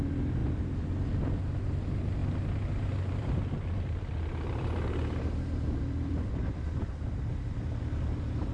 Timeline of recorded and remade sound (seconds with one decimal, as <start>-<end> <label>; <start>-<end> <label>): 0.0-0.4 recorded; 0.4-1.4 remade; 1.4-2.2 recorded; 2.2-6.9 remade; 6.9-8.5 recorded